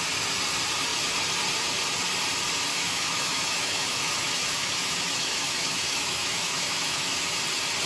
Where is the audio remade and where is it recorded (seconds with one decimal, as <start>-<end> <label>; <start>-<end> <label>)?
0.0-2.7 recorded; 2.7-7.4 remade; 7.4-7.9 recorded